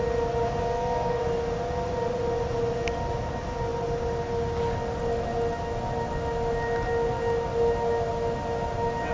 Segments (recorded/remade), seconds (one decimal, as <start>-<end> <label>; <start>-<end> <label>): 0.0-0.6 recorded; 0.6-1.2 remade; 1.2-9.1 recorded